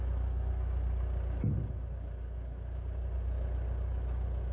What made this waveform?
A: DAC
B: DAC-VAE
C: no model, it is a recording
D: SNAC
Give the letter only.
C